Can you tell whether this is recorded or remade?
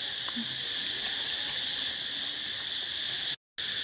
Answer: recorded